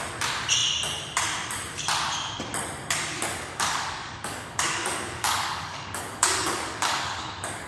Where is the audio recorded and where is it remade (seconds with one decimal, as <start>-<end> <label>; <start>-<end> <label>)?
0.0-3.1 recorded; 3.1-7.7 remade